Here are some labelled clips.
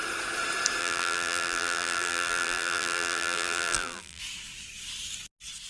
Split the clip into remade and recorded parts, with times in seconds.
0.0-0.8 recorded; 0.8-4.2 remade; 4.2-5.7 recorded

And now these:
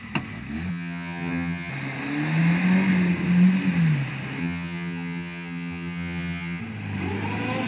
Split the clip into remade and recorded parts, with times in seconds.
0.0-0.7 recorded; 0.7-1.7 remade; 1.7-4.4 recorded; 4.4-6.6 remade; 6.6-7.7 recorded

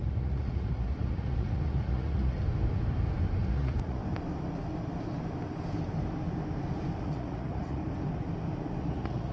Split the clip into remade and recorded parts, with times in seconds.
0.0-2.4 remade; 2.4-3.4 recorded; 3.4-4.0 remade; 4.0-7.0 recorded; 7.0-7.8 remade; 7.8-8.8 recorded; 8.8-9.3 remade